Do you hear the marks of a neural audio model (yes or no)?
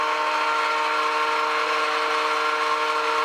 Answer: no